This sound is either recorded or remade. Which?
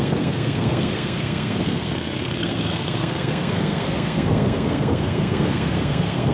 remade